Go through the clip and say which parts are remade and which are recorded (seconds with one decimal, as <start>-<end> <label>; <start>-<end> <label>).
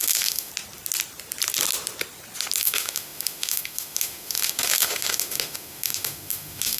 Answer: 0.0-0.5 remade; 0.5-2.6 recorded; 2.6-6.8 remade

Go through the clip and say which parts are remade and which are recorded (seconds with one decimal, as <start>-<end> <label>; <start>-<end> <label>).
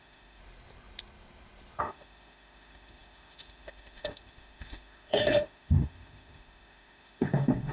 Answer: 0.0-0.4 remade; 0.4-1.8 recorded; 1.8-7.7 remade